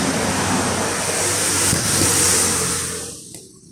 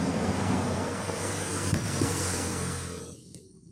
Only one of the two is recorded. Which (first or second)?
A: first